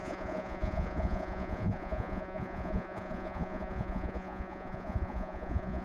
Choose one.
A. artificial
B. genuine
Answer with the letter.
A